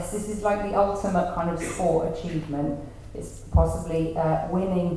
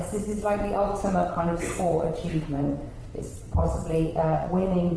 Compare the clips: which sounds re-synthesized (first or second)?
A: second